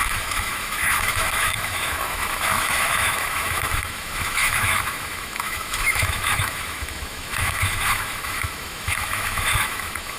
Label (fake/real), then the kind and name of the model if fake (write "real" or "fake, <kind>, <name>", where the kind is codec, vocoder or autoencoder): fake, autoencoder, DAC-VAE